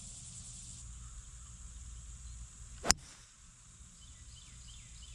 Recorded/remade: recorded